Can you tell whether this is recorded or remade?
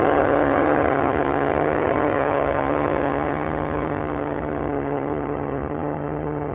remade